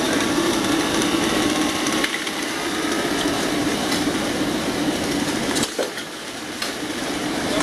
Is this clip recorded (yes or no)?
no